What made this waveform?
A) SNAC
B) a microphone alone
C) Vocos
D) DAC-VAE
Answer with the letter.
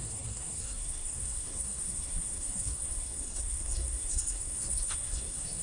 A